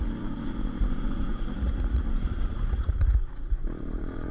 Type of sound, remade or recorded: remade